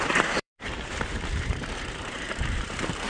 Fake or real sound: fake